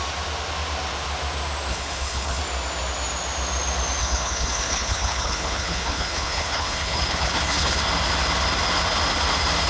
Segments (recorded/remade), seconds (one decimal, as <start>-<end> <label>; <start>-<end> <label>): 0.0-1.7 recorded; 1.7-2.4 remade; 2.4-4.0 recorded; 4.0-7.8 remade; 7.8-9.7 recorded